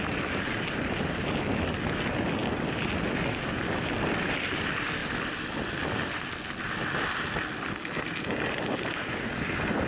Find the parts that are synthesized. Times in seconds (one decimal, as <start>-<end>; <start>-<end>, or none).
none